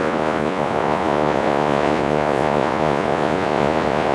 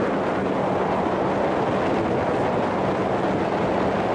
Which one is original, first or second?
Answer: second